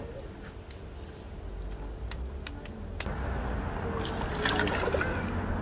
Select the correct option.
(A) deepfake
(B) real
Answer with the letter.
B